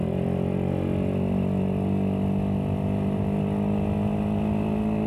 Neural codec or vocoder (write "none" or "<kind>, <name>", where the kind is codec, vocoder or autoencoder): none